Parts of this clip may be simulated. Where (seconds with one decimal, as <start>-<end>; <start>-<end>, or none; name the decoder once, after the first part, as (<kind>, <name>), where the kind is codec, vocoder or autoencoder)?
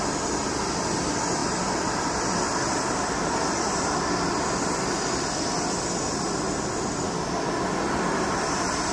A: none